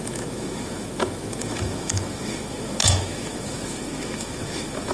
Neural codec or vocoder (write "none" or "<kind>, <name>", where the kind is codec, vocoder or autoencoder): autoencoder, DAC-VAE